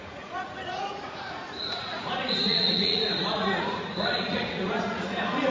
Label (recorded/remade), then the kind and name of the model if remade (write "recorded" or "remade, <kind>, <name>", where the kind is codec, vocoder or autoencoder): remade, vocoder, Vocos